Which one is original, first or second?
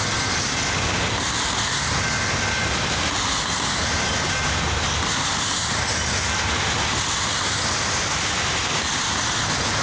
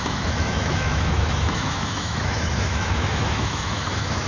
first